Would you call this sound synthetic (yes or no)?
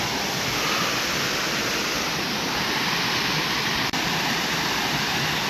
yes